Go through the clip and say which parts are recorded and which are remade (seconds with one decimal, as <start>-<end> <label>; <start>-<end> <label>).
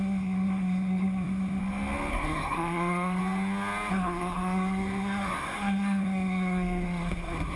0.0-1.6 remade; 1.6-2.1 recorded; 2.1-3.2 remade; 3.2-3.9 recorded; 3.9-7.6 remade